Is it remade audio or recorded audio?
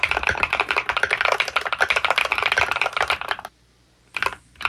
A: remade